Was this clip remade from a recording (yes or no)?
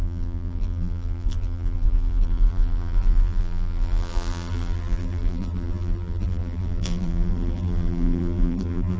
yes